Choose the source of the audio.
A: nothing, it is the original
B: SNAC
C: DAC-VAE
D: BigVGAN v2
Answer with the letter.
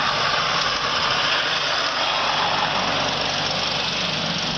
A